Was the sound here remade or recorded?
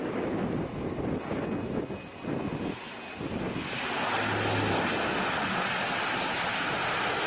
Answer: recorded